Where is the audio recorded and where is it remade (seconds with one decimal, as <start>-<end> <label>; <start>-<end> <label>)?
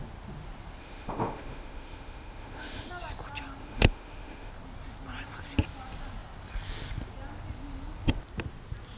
0.0-0.8 recorded; 0.8-2.9 remade; 2.9-3.6 recorded; 3.6-4.5 remade; 4.5-9.0 recorded